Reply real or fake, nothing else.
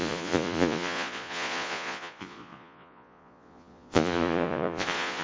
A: fake